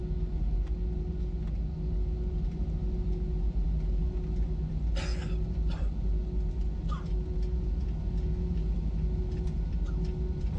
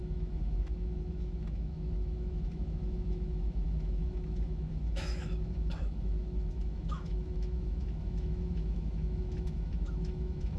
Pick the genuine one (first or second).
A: first